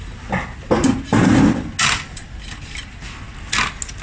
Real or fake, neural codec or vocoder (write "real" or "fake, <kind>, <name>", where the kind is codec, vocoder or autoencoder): real